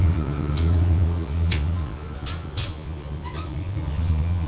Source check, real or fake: fake